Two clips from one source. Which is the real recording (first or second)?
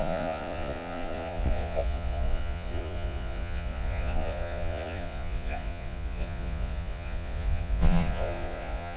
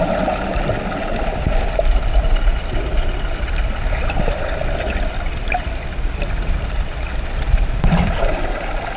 second